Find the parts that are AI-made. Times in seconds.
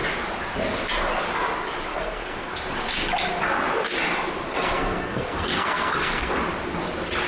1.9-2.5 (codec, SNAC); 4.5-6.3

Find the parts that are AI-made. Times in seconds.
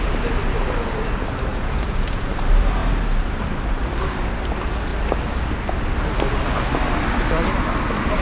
1.5-2.3 (vocoder, Vocos)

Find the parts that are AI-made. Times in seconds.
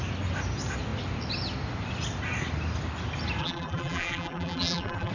3.4-5.1 (vocoder, BigVGAN v2)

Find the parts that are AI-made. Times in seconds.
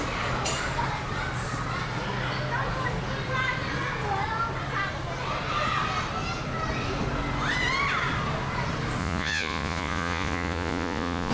9.0-11.3 (vocoder, Vocos)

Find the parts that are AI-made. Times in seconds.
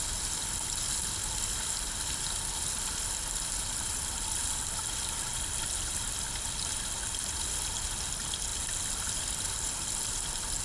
none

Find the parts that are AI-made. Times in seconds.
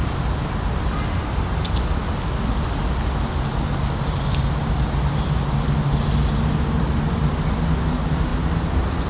none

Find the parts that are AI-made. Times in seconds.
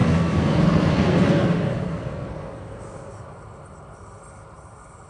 0.0-3.1 (codec, SNAC)